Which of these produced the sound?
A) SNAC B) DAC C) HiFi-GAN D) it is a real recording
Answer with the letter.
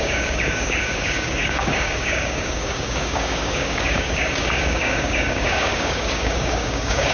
B